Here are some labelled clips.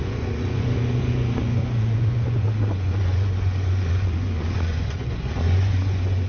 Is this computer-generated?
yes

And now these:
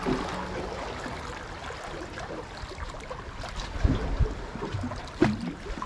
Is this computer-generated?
no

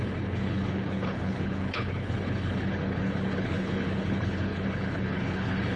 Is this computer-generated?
yes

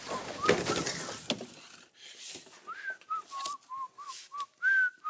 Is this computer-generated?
no